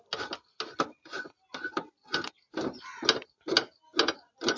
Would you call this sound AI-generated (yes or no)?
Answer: no